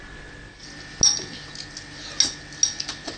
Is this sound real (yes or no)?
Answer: yes